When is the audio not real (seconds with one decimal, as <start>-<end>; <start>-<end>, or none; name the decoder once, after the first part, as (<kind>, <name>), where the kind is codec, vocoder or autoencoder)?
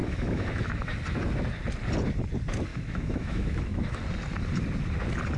0.0-0.9 (autoencoder, DAC-VAE); 2.7-4.0